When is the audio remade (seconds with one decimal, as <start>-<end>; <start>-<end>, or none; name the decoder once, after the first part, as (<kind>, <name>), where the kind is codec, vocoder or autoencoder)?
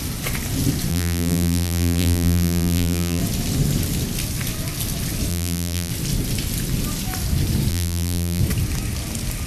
0.9-3.2 (vocoder, BigVGAN v2); 5.3-5.9; 7.7-8.4